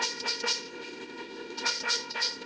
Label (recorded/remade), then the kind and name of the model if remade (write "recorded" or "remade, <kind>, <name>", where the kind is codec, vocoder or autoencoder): remade, codec, ZipCodec